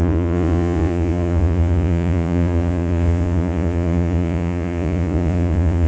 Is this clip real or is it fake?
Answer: fake